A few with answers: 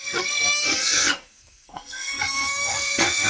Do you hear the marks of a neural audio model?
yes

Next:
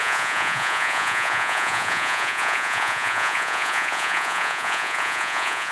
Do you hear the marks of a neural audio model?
yes